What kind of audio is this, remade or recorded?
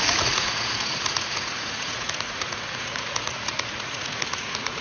remade